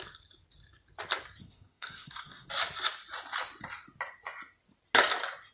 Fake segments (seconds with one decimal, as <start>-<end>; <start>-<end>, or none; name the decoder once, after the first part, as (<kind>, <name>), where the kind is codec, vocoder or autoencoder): 1.4-2.5 (codec, SNAC)